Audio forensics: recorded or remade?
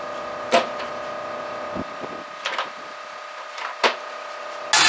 recorded